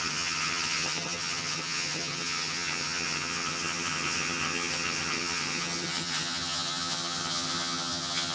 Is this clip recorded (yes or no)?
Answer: no